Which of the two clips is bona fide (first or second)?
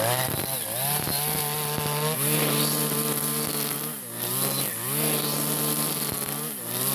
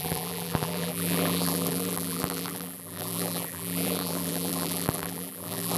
first